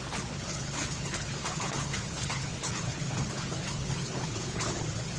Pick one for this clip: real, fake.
fake